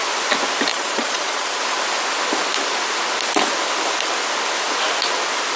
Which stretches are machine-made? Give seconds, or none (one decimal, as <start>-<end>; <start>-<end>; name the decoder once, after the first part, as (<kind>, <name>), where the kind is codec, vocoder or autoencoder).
0.7-1.6 (vocoder, Vocos)